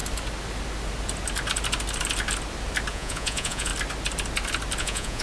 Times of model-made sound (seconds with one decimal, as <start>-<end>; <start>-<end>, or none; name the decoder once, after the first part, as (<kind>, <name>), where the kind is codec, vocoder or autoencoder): 2.9-3.7 (vocoder, Vocos); 4.8-5.2